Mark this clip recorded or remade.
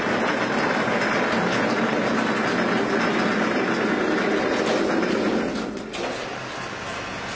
recorded